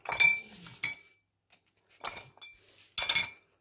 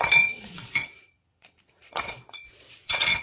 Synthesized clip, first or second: second